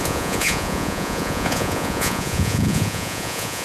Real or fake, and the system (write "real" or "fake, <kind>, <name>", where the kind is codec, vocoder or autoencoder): fake, vocoder, Vocos